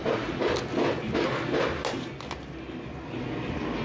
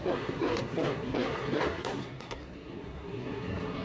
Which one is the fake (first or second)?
second